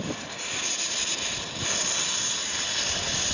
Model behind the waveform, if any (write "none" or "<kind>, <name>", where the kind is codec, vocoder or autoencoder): none